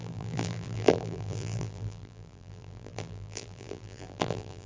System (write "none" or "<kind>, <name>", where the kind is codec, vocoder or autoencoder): vocoder, BigVGAN v2